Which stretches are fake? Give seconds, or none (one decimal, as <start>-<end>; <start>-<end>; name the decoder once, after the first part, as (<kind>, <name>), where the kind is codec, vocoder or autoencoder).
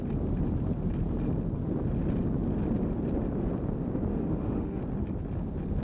4.1-4.8 (autoencoder, DAC-VAE)